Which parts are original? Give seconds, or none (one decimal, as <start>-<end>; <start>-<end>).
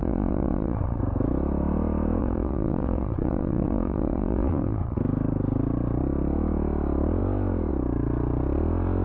1.0-2.2; 5.0-9.0